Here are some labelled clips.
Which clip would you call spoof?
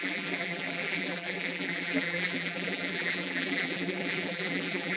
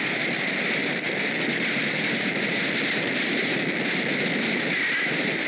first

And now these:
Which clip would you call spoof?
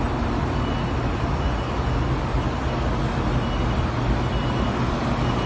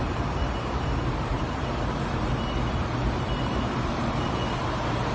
second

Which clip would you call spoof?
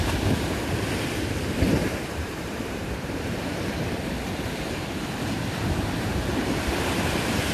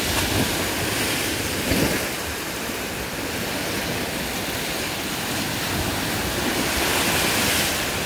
first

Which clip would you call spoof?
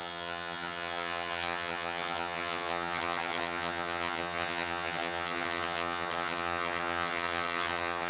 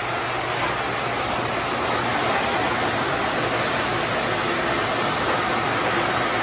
first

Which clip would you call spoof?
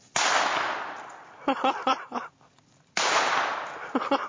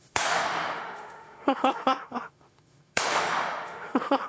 second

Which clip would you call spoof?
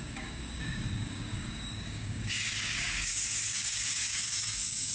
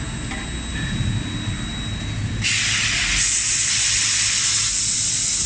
first